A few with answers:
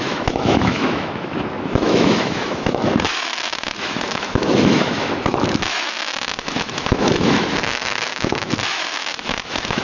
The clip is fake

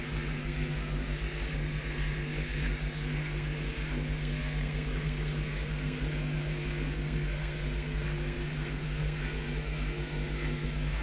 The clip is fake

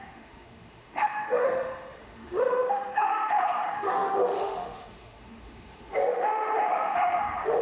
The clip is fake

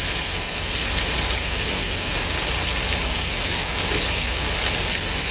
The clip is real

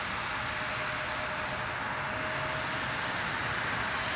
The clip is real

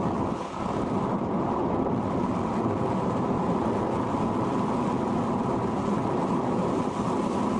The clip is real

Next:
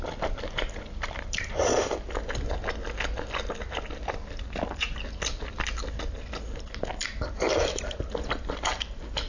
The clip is real